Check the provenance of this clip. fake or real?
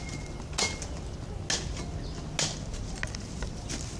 real